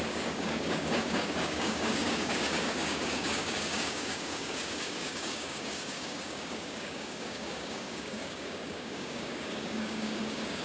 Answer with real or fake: fake